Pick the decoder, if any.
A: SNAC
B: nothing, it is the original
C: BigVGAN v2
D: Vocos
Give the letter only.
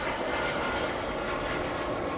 B